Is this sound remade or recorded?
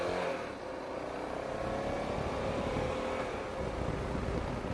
recorded